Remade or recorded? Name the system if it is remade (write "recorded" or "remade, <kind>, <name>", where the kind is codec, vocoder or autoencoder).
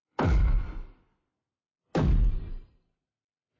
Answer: recorded